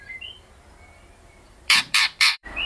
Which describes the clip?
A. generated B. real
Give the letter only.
A